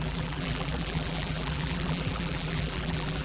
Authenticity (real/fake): fake